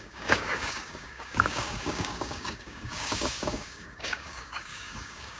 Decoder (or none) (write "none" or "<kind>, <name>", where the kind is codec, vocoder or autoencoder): codec, DAC